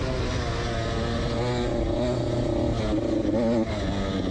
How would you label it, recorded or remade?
recorded